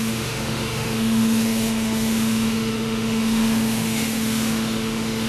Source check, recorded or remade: remade